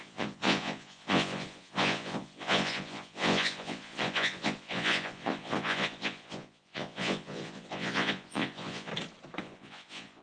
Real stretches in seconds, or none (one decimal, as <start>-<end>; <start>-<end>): 8.9-9.4